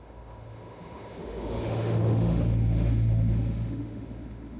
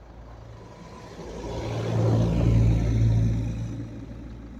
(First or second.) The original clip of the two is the second